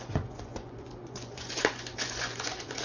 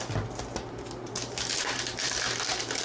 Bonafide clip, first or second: second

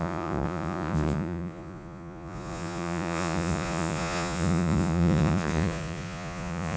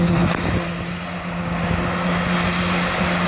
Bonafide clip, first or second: second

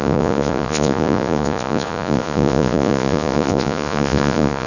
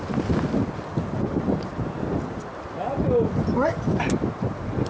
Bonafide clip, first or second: second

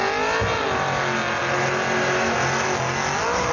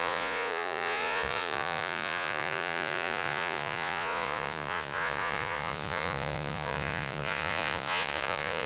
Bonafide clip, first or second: first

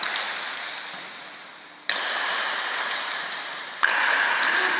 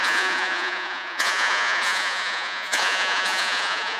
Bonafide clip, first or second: first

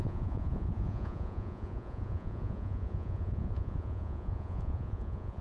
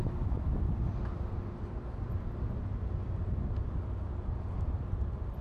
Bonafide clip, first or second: second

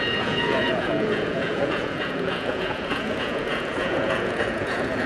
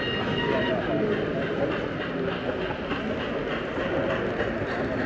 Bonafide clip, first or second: second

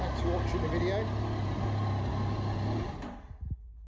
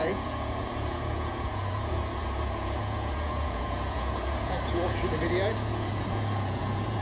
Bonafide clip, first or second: first